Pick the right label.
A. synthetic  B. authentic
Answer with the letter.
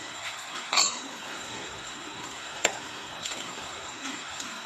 A